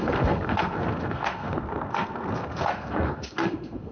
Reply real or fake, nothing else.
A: fake